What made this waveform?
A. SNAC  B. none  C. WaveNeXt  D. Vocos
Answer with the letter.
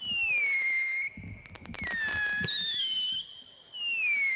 B